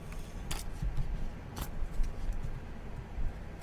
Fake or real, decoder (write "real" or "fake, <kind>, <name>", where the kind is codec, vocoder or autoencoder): real